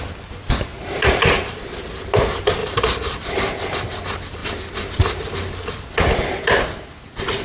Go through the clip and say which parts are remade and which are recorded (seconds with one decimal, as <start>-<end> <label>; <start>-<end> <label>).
0.0-0.7 recorded; 0.7-1.8 remade; 1.8-2.6 recorded; 2.6-3.2 remade; 3.2-7.4 recorded